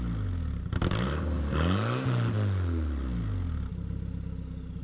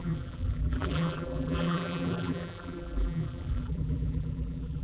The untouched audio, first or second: first